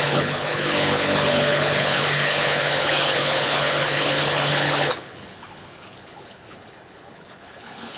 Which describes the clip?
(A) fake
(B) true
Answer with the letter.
A